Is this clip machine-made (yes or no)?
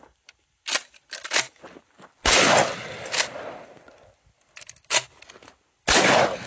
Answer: no